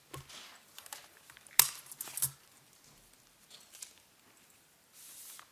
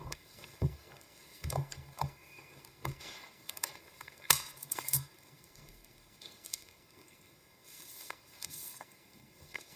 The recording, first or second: first